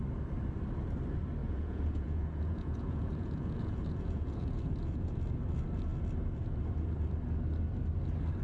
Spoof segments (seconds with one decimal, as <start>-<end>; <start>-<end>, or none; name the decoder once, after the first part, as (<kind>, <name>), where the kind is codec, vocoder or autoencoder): 1.4-5.2 (vocoder, Vocos)